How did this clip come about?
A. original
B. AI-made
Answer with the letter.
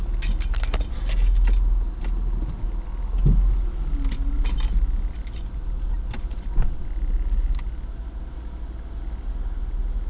A